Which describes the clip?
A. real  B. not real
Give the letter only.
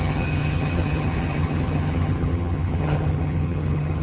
B